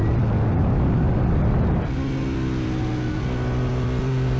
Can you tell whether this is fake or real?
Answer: real